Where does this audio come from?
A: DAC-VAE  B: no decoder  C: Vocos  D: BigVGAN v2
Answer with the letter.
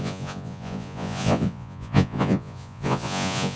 C